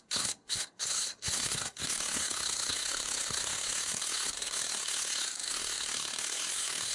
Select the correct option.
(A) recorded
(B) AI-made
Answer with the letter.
B